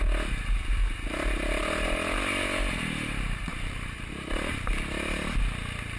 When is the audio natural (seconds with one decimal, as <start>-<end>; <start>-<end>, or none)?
0.0-3.5; 4.1-6.0